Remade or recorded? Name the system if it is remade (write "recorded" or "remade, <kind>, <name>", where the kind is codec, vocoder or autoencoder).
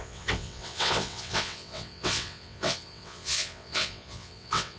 remade, vocoder, WaveNeXt